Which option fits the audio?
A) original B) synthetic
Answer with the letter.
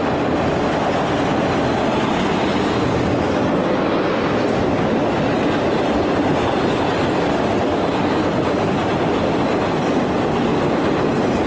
A